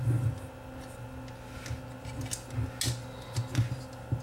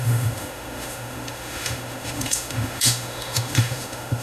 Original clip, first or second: first